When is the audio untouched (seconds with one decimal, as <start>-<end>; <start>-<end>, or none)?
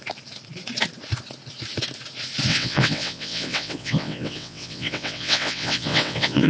0.0-2.5